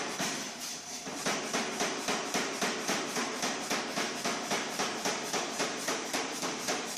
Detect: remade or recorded remade